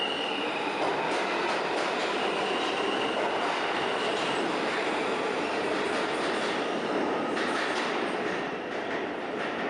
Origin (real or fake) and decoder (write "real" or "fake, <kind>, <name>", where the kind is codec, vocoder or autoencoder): fake, vocoder, BigVGAN v2